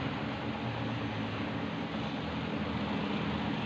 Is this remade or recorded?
recorded